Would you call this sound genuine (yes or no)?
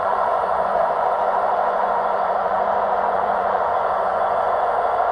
no